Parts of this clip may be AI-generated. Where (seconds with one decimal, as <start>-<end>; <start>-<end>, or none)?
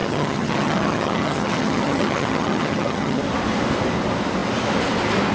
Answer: 0.0-3.2